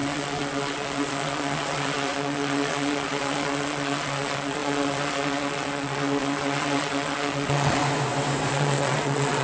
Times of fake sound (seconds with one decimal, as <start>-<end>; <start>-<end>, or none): 0.0-7.8; 8.5-9.4